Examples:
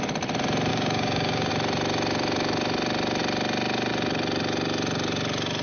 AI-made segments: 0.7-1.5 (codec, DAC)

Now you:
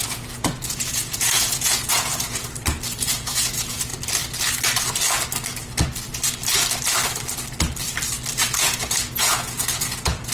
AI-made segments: 0.0-2.4 (vocoder, Vocos); 3.0-3.9; 8.4-10.3